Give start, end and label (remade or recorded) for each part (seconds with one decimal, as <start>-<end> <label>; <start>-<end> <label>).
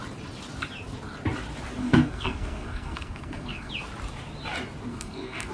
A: 0.0-1.8 recorded; 1.8-3.7 remade; 3.7-4.9 recorded; 4.9-5.5 remade